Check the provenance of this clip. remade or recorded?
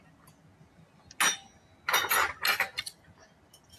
recorded